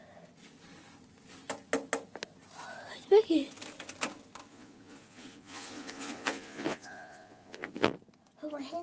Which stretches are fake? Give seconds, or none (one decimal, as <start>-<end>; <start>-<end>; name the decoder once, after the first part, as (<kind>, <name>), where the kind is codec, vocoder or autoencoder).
4.5-7.9 (vocoder, Vocos)